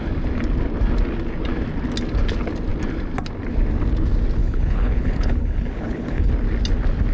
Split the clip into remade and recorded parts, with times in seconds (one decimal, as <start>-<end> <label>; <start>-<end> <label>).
0.0-4.4 recorded; 4.4-6.3 remade; 6.3-7.1 recorded